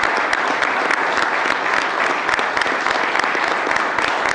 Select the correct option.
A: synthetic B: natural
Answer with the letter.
B